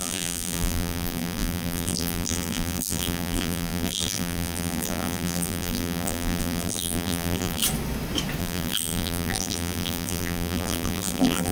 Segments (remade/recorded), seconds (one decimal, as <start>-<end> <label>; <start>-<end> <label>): 0.0-7.6 remade; 7.6-8.4 recorded; 8.4-11.5 remade